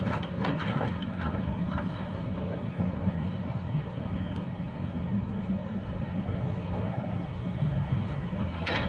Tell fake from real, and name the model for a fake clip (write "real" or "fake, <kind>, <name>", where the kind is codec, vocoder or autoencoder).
fake, codec, SNAC